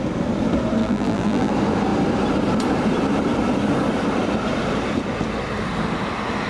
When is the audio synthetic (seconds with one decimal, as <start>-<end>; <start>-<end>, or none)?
0.8-1.5